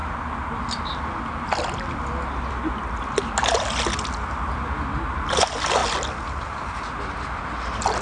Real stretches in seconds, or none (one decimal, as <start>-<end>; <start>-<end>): 0.0-8.0